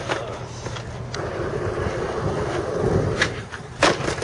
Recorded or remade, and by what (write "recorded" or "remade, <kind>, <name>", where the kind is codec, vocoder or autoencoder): recorded